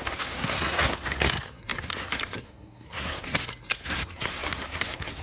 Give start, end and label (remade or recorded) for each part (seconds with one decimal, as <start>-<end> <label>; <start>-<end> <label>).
0.0-5.2 remade